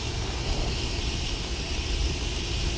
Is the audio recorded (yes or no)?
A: yes